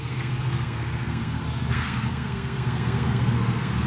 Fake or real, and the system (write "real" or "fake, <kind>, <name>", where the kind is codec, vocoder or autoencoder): fake, codec, SNAC